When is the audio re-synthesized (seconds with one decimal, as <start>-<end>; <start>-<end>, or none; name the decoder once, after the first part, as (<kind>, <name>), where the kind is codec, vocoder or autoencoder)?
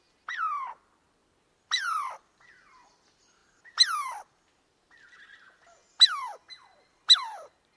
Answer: none